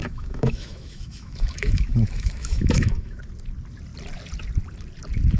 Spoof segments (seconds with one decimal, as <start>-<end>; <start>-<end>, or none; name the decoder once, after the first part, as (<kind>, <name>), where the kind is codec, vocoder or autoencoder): 0.0-3.2 (autoencoder, DAC-VAE)

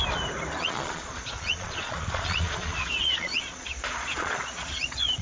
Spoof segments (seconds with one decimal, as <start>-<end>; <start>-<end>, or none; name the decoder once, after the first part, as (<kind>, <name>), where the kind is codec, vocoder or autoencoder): 0.6-5.2 (vocoder, Vocos)

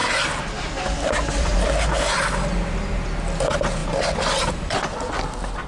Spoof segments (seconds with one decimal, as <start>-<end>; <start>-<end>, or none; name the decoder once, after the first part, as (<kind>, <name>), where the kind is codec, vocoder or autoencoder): none

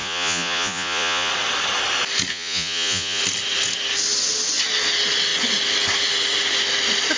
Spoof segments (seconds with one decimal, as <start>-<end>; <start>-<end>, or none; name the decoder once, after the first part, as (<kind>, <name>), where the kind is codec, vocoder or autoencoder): 0.0-1.3 (vocoder, Vocos); 2.3-3.2